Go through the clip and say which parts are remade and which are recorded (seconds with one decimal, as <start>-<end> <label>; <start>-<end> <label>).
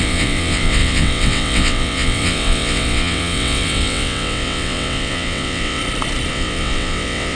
0.0-5.8 remade; 5.8-6.3 recorded; 6.3-7.4 remade